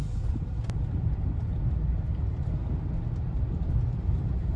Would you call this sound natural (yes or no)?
yes